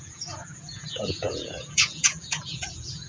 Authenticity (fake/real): fake